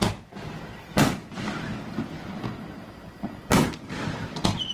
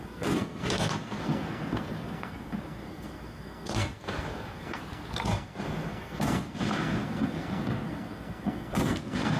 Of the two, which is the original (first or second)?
first